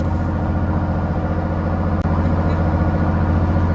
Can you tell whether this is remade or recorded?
recorded